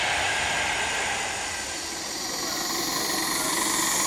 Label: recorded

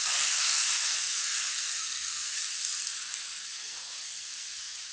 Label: remade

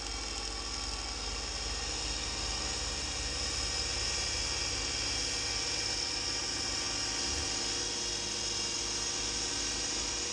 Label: recorded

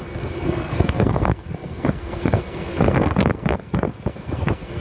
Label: remade